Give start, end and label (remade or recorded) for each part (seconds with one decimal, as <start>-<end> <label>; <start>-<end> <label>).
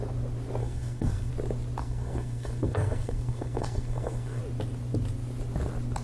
0.0-0.6 recorded; 0.6-1.3 remade; 1.3-1.8 recorded; 1.8-4.4 remade; 4.4-6.0 recorded